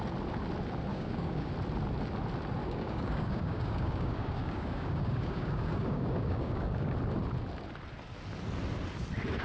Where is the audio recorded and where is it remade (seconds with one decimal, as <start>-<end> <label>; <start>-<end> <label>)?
0.0-0.9 recorded; 0.9-1.5 remade; 1.5-2.6 recorded; 2.6-6.9 remade; 6.9-9.4 recorded

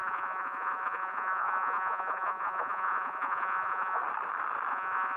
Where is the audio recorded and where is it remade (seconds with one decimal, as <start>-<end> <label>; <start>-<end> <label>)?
0.0-4.0 remade; 4.0-4.7 recorded; 4.7-5.2 remade